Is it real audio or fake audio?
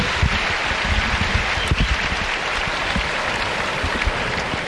real